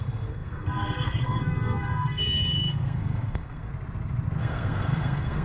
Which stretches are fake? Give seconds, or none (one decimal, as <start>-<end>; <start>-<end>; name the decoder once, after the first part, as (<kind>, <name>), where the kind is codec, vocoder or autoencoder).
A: 0.0-3.7 (codec, SNAC); 4.4-5.4